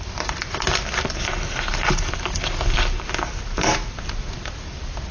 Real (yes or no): no